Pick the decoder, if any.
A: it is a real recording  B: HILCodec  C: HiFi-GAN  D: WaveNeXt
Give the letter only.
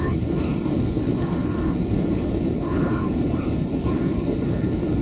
B